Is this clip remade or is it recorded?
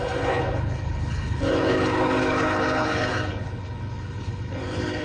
remade